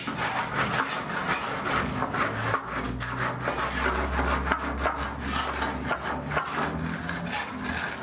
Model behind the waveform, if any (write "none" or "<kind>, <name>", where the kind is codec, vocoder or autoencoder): none